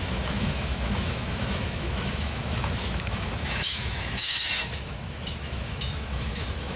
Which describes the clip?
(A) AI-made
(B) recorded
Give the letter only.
A